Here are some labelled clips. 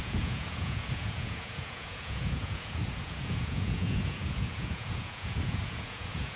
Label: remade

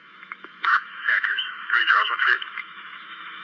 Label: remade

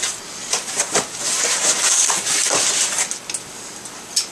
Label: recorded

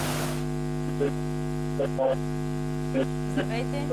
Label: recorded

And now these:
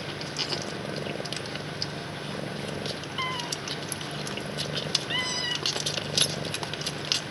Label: recorded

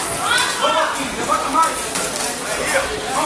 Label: recorded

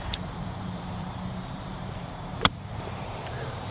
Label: remade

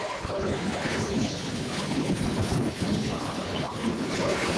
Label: remade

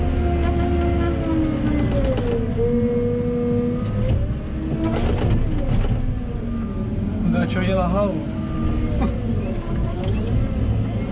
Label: recorded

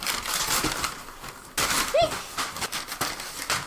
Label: recorded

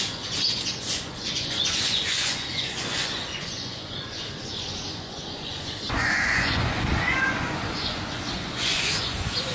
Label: remade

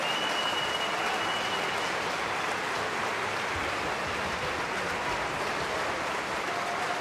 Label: recorded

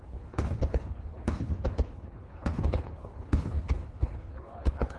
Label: remade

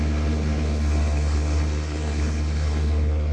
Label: remade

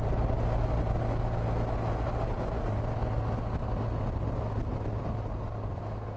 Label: recorded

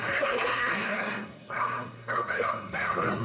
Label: remade